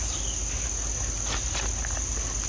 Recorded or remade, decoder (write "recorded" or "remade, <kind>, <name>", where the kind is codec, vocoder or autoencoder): recorded